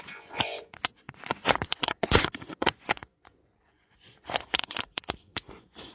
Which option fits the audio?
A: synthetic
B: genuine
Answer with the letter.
A